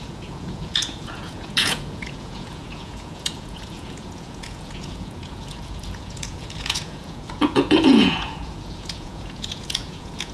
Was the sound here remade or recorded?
remade